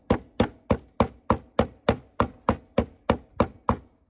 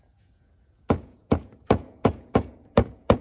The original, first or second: first